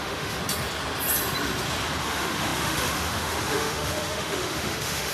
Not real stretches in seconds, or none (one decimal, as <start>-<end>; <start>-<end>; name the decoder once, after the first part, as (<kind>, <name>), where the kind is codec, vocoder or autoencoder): 0.0-0.4 (autoencoder, DAC-VAE); 2.0-5.1